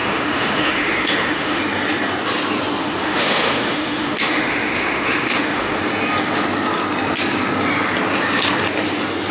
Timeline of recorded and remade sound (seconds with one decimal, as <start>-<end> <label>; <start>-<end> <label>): 0.0-1.6 remade; 1.6-2.8 recorded; 2.8-5.8 remade; 5.8-9.3 recorded